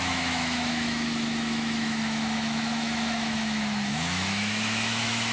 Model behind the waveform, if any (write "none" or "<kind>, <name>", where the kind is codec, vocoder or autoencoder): autoencoder, DAC-VAE